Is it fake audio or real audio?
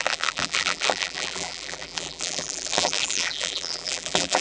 fake